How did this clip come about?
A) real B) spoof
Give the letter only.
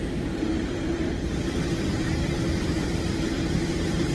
B